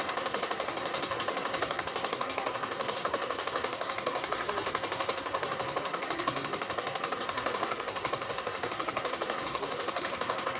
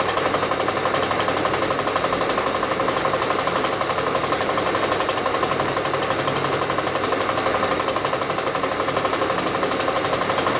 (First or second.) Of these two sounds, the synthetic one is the first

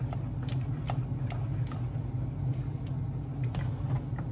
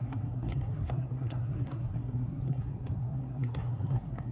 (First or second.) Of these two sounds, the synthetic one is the second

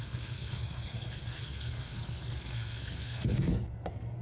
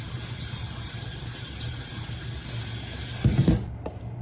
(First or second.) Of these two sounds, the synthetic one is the first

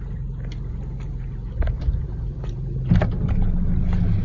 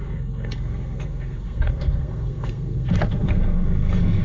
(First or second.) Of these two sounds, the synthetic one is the second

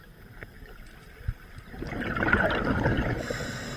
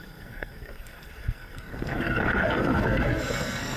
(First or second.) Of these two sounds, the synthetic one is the second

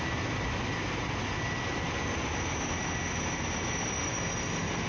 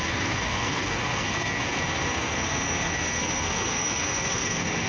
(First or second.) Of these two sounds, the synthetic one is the second